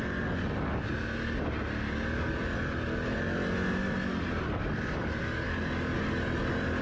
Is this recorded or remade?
recorded